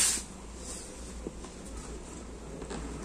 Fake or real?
real